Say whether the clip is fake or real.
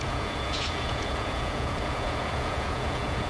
fake